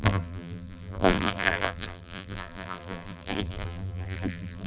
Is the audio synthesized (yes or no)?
yes